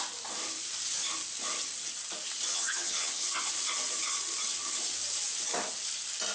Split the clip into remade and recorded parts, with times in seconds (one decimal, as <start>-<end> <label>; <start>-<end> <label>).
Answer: 0.0-2.5 recorded; 2.5-3.5 remade; 3.5-6.3 recorded